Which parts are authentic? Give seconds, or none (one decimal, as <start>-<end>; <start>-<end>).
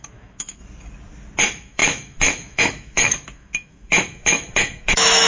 0.6-1.4